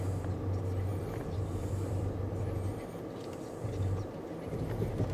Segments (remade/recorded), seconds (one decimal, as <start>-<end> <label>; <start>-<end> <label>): 0.0-0.9 recorded; 0.9-2.4 remade; 2.4-5.1 recorded